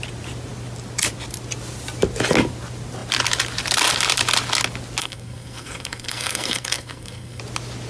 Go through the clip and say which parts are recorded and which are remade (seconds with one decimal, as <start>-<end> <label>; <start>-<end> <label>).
0.0-5.0 recorded; 5.0-7.4 remade; 7.4-7.9 recorded